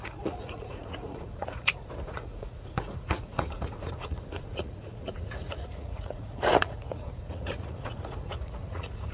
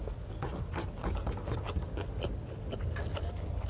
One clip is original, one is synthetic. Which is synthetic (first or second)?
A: first